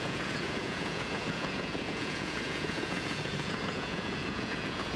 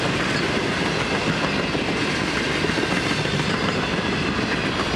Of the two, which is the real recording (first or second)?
second